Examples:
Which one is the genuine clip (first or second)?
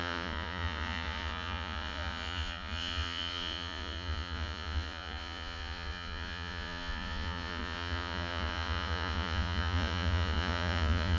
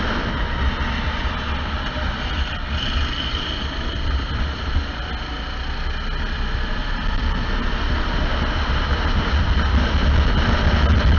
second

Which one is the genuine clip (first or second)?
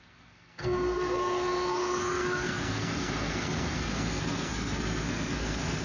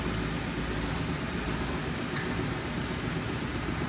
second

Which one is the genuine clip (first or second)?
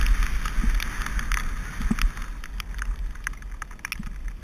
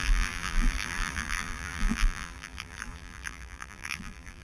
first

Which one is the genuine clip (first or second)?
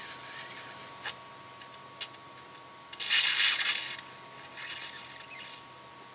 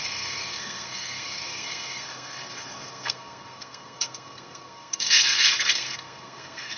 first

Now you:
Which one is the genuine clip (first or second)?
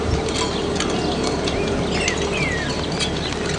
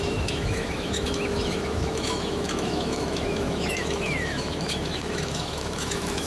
first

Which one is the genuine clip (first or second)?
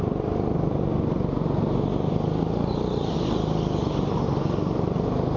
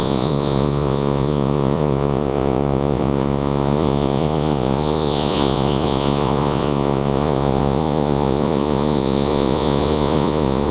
first